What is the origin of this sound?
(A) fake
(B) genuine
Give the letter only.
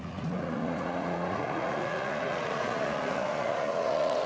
A